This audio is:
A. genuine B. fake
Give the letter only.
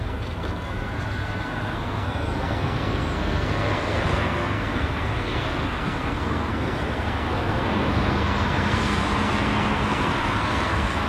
B